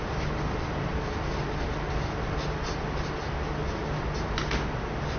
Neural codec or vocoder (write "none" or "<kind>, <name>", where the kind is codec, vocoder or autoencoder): none